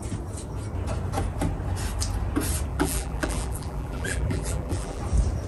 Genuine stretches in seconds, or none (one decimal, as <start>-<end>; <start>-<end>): 0.0-2.7; 5.0-5.5